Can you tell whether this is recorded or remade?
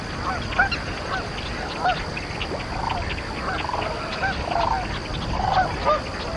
recorded